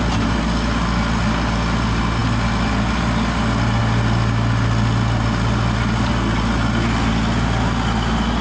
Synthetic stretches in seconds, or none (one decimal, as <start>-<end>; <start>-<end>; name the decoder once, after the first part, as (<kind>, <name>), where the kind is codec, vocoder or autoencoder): none